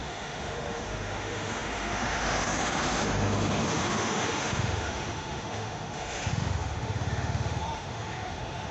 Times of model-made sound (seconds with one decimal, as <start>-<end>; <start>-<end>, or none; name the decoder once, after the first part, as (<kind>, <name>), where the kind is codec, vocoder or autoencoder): 0.0-8.7 (autoencoder, DAC-VAE)